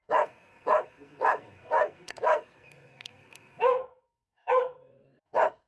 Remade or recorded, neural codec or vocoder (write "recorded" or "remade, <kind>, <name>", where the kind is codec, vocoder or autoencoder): remade, codec, SNAC